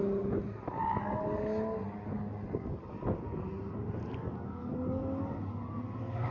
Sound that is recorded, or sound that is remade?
recorded